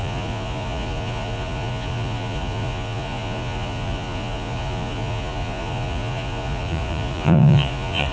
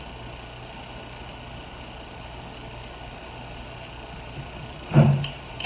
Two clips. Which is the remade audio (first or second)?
first